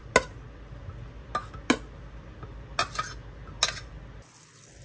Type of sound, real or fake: real